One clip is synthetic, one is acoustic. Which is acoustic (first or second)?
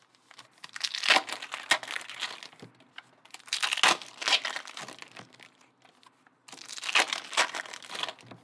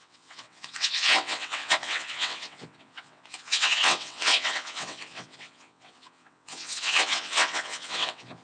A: first